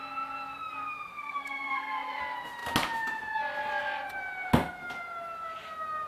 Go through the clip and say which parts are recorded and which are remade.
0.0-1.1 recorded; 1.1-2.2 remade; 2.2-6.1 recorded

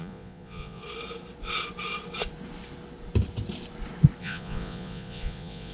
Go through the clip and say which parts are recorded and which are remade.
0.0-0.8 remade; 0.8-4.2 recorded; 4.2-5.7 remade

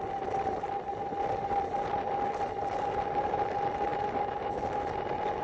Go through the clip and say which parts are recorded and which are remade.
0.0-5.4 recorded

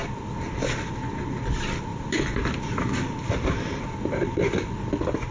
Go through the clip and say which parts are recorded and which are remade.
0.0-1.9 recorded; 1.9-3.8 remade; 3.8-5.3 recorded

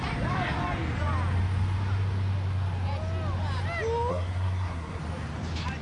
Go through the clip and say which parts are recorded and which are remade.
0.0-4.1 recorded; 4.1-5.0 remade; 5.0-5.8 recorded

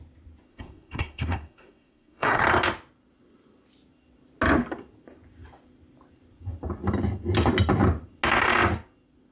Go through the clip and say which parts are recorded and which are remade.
0.0-0.5 recorded; 0.5-2.4 remade; 2.4-9.3 recorded